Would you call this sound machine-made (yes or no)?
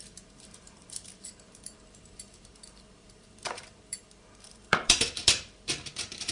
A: yes